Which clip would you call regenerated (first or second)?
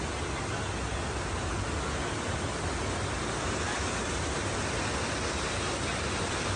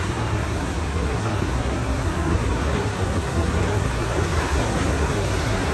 second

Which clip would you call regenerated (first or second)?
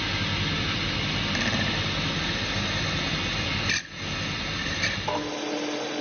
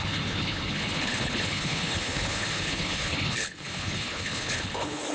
second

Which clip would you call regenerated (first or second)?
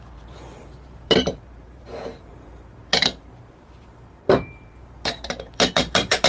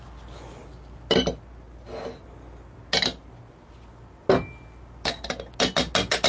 first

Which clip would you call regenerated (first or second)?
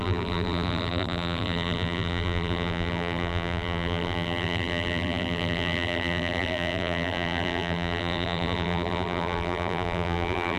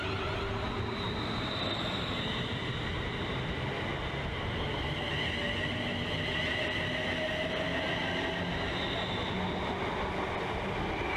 first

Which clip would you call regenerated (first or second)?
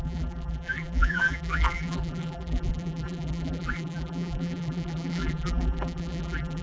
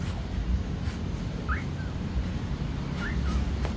first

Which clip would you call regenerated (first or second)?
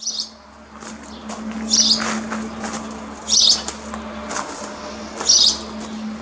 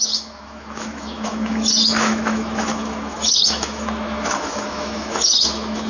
second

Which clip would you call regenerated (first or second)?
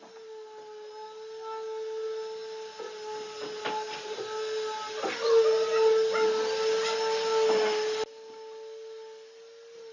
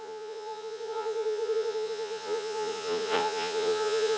second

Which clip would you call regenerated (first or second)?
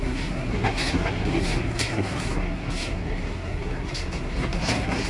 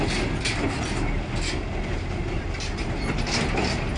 first